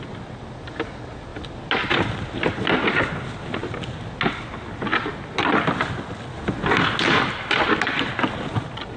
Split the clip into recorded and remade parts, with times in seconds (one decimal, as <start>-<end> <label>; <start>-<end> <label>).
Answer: 0.0-9.0 recorded